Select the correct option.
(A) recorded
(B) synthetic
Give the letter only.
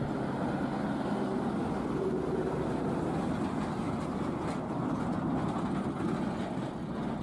A